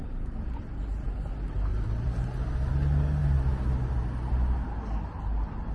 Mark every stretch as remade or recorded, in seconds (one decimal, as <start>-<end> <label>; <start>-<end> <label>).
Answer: 0.0-1.7 recorded; 1.7-2.7 remade; 2.7-5.7 recorded